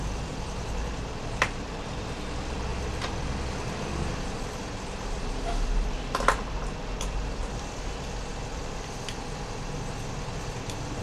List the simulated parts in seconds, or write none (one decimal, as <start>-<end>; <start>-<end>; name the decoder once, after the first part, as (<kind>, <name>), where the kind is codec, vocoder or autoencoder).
0.0-2.7 (vocoder, BigVGAN v2); 4.1-11.0